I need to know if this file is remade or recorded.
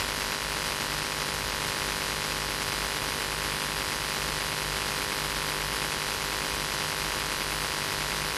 recorded